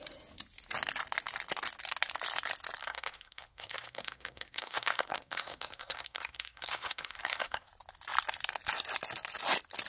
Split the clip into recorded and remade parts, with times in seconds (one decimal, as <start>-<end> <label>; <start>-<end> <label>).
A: 0.0-2.8 recorded; 2.8-7.7 remade; 7.7-9.9 recorded